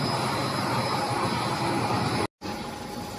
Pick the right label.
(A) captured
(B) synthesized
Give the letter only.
A